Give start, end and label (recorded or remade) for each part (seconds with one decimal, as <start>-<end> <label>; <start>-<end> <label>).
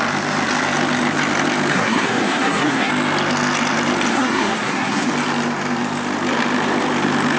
0.0-1.7 recorded; 1.7-2.9 remade; 2.9-4.1 recorded; 4.1-5.1 remade; 5.1-7.4 recorded